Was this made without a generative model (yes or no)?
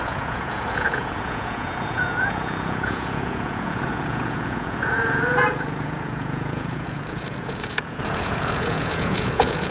no